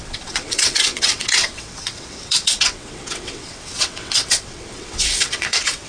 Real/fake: fake